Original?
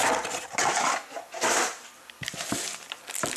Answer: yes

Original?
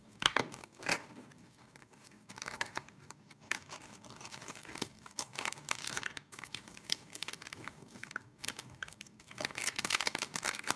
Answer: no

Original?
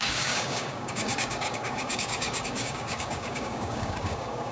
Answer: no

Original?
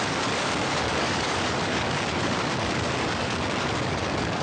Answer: no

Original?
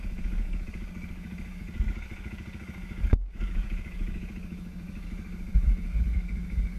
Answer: no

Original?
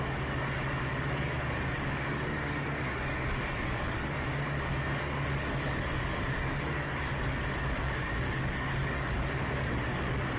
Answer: no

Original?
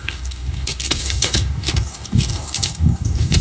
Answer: no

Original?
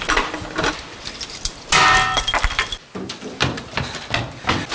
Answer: yes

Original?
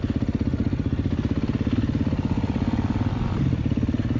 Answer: yes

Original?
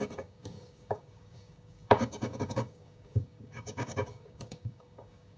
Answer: no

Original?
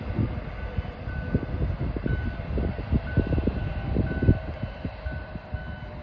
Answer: yes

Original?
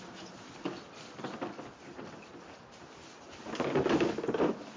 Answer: yes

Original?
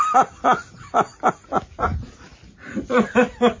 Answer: yes